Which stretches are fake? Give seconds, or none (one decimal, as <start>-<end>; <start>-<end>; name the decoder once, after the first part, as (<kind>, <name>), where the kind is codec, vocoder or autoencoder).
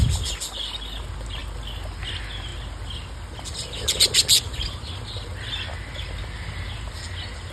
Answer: none